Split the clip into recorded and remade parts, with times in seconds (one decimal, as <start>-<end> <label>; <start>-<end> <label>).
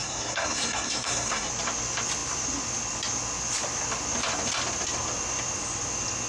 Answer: 0.0-1.5 remade; 1.5-6.3 recorded